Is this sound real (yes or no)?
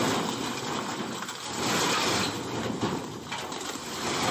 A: yes